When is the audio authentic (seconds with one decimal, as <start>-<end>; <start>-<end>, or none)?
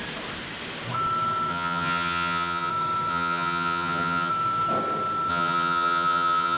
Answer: 0.0-1.5; 2.7-3.1; 4.3-5.3